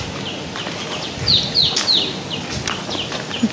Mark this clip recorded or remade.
recorded